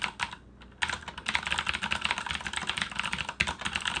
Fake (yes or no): no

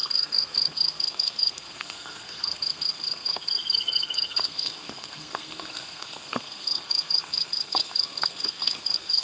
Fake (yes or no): yes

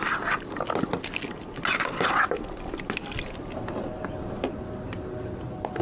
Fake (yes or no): no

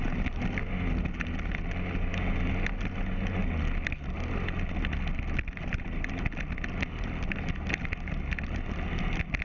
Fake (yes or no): no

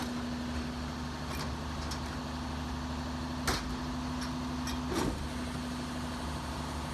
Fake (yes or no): no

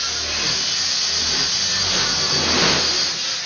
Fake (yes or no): no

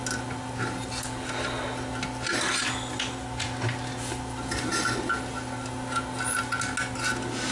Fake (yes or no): no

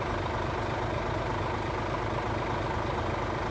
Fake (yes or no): no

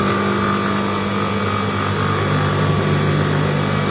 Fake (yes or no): no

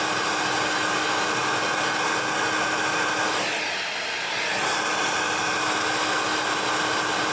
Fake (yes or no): no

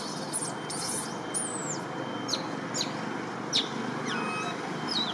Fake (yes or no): no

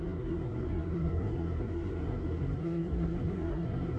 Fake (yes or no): yes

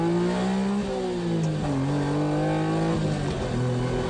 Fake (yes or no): no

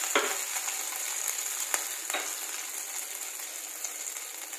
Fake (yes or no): no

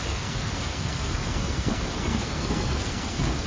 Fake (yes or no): yes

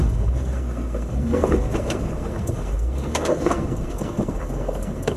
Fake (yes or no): yes